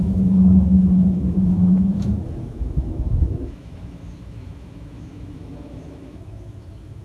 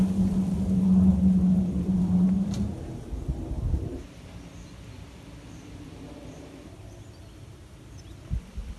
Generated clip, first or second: first